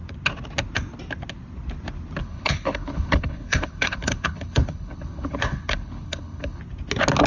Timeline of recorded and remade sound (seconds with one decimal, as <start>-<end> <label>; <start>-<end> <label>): 0.0-2.2 recorded; 2.2-6.6 remade; 6.6-7.3 recorded